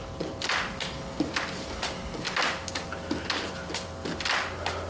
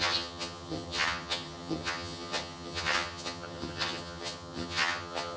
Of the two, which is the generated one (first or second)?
second